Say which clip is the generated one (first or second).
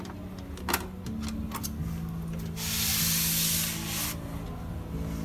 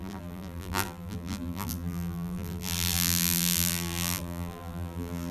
second